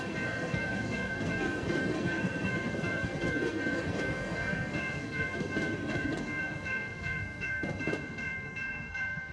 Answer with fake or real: fake